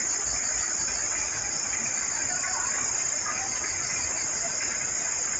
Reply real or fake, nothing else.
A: real